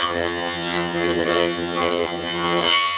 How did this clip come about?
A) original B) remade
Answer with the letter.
B